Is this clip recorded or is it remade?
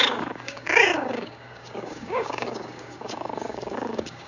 remade